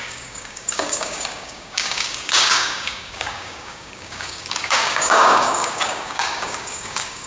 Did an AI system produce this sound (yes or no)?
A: yes